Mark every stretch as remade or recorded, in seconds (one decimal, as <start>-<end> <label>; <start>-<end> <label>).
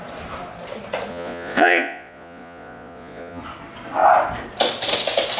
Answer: 0.0-1.1 recorded; 1.1-3.4 remade; 3.4-5.4 recorded